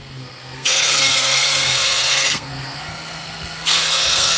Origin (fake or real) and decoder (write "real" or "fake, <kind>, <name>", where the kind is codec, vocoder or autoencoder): fake, codec, SNAC